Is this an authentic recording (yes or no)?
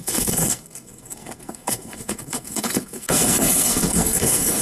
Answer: no